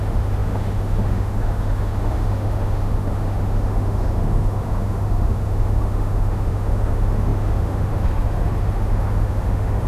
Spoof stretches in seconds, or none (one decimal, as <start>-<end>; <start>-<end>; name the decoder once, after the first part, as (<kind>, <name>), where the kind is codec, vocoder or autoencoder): 0.0-9.9 (autoencoder, DAC-VAE)